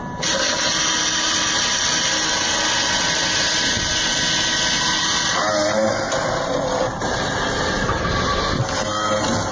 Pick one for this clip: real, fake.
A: real